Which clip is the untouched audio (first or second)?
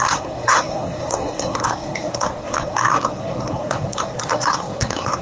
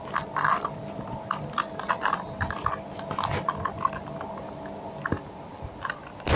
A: second